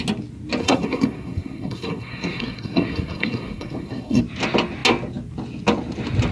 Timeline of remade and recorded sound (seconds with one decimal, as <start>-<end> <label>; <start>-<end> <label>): 0.0-0.6 recorded; 0.6-4.2 remade; 4.2-6.3 recorded